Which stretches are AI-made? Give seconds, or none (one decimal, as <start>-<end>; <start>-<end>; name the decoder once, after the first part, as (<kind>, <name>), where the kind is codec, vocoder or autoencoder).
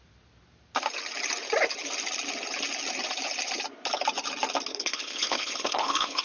4.7-6.2 (codec, HILCodec)